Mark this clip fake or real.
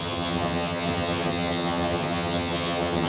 fake